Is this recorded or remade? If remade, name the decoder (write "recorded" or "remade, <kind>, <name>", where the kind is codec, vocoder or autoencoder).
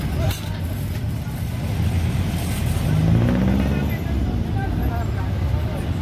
recorded